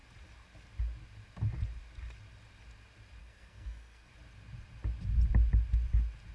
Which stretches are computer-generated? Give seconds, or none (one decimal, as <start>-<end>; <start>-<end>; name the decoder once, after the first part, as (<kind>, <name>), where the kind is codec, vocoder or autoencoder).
3.2-4.1 (codec, SNAC)